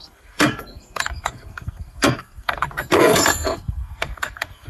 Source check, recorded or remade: remade